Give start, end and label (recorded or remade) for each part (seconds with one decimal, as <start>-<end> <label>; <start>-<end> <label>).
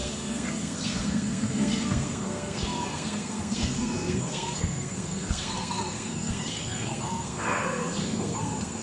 0.0-8.8 remade